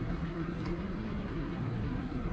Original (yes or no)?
no